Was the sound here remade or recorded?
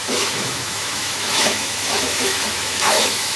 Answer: remade